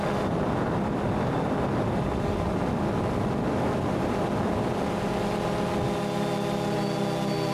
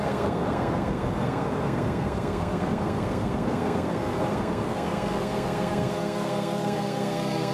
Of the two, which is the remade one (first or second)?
second